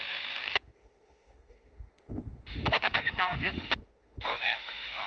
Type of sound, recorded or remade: remade